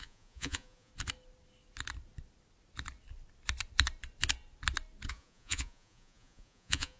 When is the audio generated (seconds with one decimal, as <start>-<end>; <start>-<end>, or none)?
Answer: 0.0-0.9; 5.1-7.0